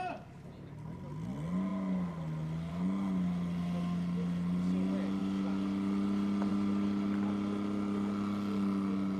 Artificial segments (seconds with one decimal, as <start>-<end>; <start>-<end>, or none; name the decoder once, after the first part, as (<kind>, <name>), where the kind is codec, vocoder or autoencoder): none